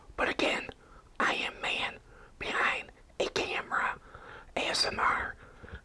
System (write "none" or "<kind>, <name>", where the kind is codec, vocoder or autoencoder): none